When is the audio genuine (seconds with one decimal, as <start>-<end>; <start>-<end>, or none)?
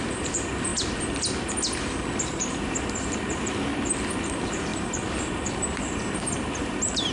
0.7-2.6; 3.7-4.2